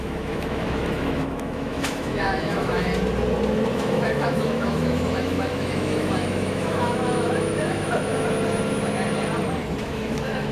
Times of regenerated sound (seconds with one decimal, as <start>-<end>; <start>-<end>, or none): 0.0-2.9; 3.7-8.1; 9.8-10.5